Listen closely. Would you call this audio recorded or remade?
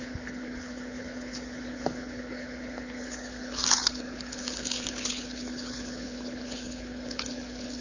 remade